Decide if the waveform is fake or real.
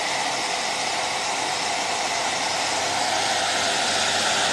fake